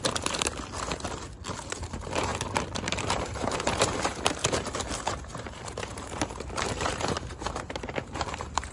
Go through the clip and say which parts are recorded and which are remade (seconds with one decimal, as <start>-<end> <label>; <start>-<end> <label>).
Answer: 0.0-0.5 remade; 0.5-1.7 recorded; 1.7-8.7 remade